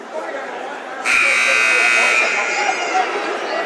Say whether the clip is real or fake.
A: real